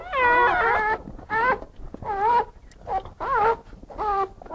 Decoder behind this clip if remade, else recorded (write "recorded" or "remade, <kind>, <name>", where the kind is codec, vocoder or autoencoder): recorded